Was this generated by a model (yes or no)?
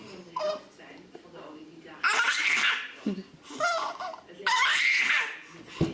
no